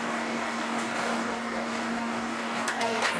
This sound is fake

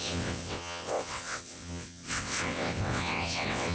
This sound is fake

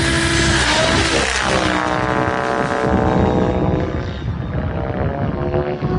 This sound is real